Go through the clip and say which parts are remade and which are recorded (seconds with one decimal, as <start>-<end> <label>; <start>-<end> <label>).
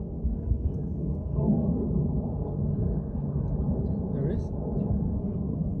0.0-1.8 remade; 1.8-5.2 recorded; 5.2-5.8 remade